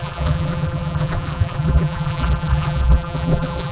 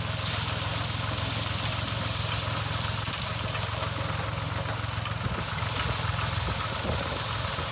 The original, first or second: second